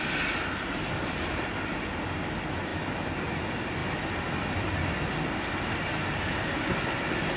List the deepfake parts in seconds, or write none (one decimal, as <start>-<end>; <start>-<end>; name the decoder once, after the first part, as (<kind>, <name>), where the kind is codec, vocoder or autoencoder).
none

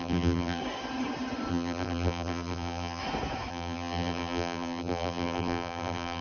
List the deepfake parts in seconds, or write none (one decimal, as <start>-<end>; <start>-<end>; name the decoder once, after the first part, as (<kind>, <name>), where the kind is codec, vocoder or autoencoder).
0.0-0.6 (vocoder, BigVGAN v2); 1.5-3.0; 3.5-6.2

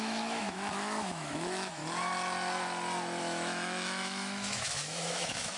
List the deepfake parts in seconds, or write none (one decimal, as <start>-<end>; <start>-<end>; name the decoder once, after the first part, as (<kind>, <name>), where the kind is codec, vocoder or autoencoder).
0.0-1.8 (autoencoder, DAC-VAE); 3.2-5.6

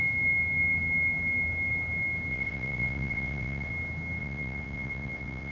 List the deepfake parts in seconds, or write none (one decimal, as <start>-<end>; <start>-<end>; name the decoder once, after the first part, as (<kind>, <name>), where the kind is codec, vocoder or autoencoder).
2.3-3.7 (vocoder, WaveNeXt); 4.2-5.5

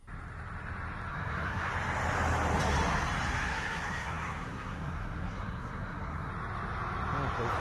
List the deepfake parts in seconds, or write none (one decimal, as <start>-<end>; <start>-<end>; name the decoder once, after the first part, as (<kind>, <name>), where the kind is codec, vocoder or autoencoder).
1.1-1.7 (codec, SNAC); 3.5-6.3